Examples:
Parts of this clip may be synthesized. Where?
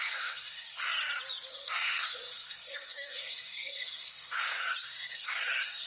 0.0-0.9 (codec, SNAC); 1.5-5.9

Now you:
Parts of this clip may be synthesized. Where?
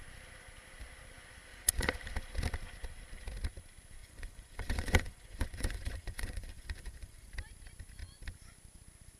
1.5-2.0 (vocoder, Vocos); 4.0-7.3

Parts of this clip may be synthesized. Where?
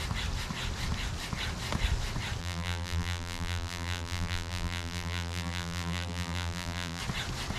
2.4-7.0 (vocoder, BigVGAN v2)